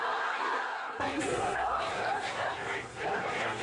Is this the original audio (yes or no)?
no